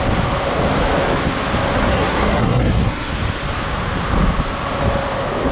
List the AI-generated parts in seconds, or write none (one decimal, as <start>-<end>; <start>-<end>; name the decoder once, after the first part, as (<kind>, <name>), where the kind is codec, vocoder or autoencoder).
1.8-3.1 (codec, SNAC)